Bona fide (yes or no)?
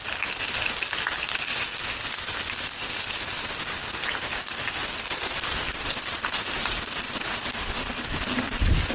yes